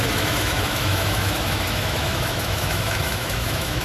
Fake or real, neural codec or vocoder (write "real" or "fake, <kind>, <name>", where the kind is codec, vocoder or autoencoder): fake, autoencoder, DAC-VAE